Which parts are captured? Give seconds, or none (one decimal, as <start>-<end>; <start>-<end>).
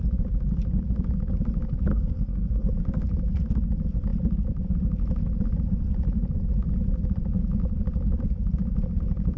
0.0-1.9; 2.7-9.4